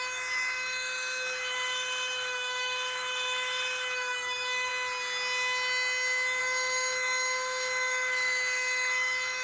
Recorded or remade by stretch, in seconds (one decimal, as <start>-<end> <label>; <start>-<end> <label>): 0.0-4.7 remade; 4.7-6.4 recorded; 6.4-9.4 remade